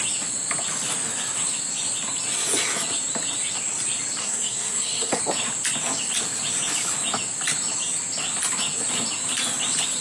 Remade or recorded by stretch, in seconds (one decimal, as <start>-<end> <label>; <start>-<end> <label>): 0.0-4.2 recorded; 4.2-5.2 remade; 5.2-10.0 recorded